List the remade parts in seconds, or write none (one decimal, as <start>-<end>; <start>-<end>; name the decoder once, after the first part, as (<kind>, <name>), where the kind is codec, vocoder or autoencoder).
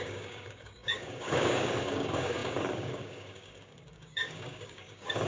0.0-5.3 (codec, DAC)